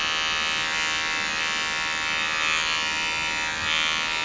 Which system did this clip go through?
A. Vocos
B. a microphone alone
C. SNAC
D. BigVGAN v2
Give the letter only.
B